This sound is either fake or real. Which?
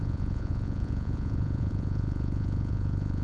fake